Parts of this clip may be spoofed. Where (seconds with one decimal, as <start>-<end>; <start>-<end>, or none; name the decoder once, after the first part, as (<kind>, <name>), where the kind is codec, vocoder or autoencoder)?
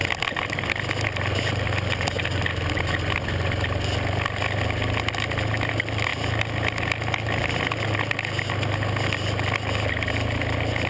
none